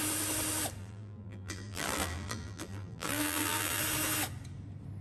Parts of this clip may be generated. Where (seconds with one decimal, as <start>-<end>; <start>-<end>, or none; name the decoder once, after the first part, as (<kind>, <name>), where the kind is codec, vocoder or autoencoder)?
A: 0.8-3.8 (vocoder, BigVGAN v2)